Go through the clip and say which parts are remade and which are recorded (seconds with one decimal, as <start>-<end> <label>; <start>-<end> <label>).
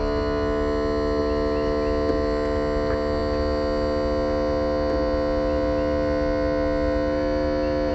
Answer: 0.0-7.9 recorded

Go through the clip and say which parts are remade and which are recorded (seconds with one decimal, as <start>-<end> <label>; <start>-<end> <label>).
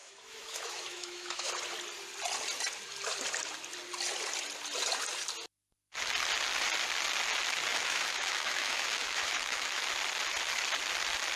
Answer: 0.0-1.5 remade; 1.5-7.7 recorded; 7.7-9.8 remade; 9.8-11.4 recorded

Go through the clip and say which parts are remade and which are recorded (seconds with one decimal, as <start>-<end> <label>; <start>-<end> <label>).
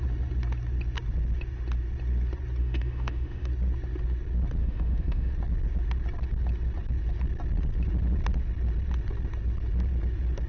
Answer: 0.0-2.6 recorded; 2.6-3.5 remade; 3.5-4.6 recorded; 4.6-5.3 remade; 5.3-10.5 recorded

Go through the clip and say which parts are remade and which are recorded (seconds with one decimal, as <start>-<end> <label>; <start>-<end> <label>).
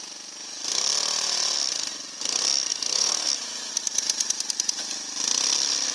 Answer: 0.0-2.7 recorded; 2.7-3.7 remade; 3.7-5.9 recorded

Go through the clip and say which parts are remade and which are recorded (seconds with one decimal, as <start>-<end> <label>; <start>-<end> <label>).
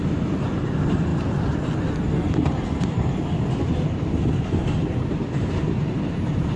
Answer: 0.0-6.6 recorded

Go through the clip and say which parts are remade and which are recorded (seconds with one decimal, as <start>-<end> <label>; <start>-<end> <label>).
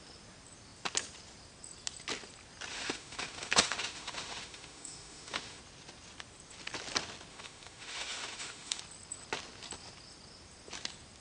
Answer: 0.0-2.7 recorded; 2.7-5.6 remade; 5.6-7.3 recorded; 7.3-8.8 remade; 8.8-11.2 recorded